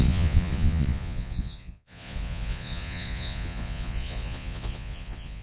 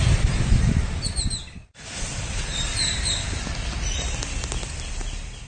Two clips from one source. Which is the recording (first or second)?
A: second